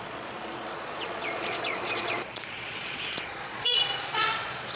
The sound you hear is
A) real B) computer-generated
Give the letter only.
B